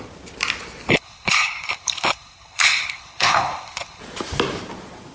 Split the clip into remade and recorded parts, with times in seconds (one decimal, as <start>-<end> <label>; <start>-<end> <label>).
0.0-0.9 recorded; 0.9-4.0 remade; 4.0-5.1 recorded